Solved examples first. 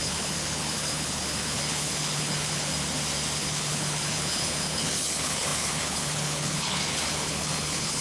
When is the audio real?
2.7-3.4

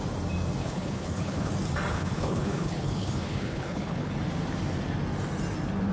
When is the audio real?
0.0-0.6; 1.5-1.9; 4.1-5.9